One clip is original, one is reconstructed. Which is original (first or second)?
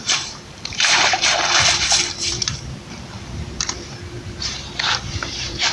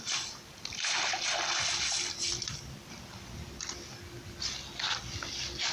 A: second